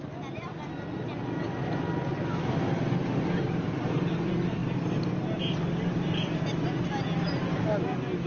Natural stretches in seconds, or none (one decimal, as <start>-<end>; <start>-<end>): 0.0-8.3